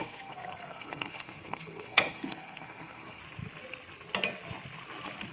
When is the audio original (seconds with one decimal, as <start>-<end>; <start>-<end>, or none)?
3.2-5.3